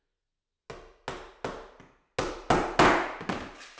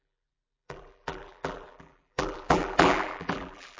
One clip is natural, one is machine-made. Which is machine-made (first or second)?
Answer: second